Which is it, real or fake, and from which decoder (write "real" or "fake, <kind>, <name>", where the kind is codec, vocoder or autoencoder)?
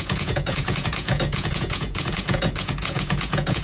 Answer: fake, vocoder, Vocos